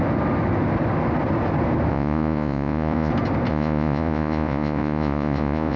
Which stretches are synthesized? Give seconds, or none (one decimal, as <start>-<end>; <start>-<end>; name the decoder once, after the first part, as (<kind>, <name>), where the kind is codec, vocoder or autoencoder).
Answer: 1.9-3.1 (vocoder, Vocos); 3.5-5.8